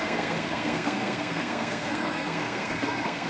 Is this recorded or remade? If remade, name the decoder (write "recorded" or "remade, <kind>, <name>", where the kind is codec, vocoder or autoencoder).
remade, codec, SNAC